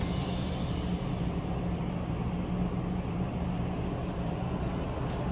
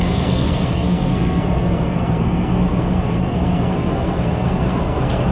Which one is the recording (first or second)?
first